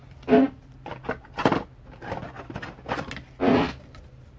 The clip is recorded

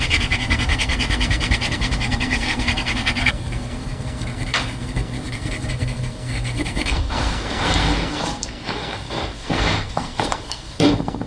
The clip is remade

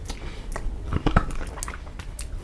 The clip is recorded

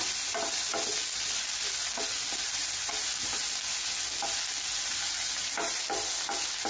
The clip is recorded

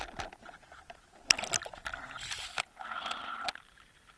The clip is recorded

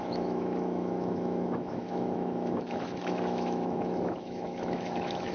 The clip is remade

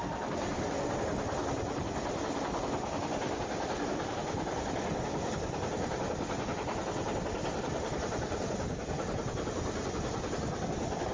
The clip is recorded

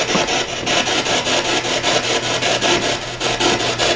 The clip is recorded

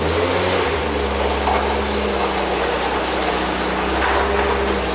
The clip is recorded